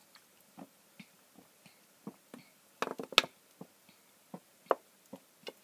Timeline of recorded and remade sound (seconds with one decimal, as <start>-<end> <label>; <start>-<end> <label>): 0.0-5.6 recorded